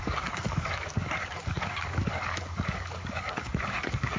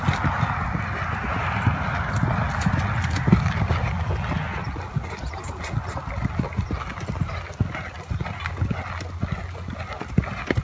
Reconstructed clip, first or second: first